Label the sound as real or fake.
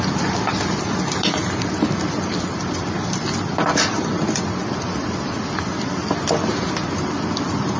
real